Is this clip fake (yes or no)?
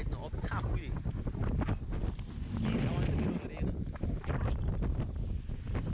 no